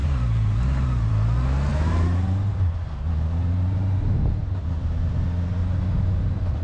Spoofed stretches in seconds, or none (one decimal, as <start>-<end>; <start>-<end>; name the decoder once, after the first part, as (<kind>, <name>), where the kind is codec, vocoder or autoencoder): 0.0-1.1 (vocoder, BigVGAN v2); 1.7-4.0; 4.4-5.0